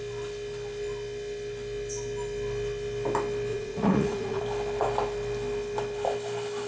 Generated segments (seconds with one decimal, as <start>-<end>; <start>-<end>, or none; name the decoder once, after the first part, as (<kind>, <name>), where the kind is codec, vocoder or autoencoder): 3.5-4.4 (vocoder, Vocos)

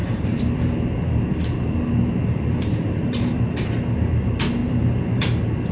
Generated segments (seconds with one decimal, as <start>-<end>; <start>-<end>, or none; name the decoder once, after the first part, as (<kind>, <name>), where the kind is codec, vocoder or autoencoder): 0.0-3.4 (vocoder, BigVGAN v2); 4.6-5.2

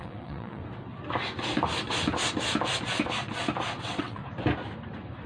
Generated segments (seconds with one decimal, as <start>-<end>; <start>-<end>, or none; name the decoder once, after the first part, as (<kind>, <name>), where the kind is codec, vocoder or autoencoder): 0.0-0.6 (vocoder, WaveNeXt); 3.8-4.2

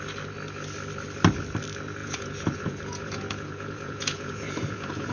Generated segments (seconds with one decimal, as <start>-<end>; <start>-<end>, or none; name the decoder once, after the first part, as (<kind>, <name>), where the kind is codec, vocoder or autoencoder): 2.0-5.1 (vocoder, Vocos)

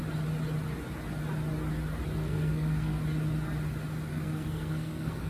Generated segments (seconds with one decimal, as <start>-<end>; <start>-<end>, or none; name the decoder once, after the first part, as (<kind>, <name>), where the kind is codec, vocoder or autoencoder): 2.2-3.0 (codec, SNAC); 4.1-5.3